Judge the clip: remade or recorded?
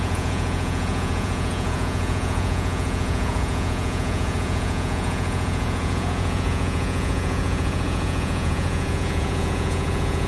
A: remade